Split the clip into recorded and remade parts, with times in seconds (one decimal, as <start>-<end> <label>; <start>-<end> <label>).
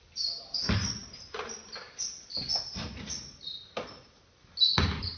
0.0-5.2 recorded